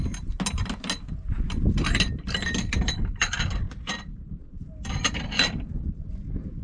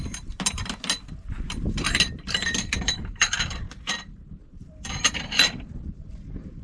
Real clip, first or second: first